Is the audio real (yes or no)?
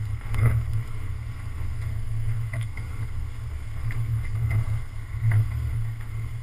no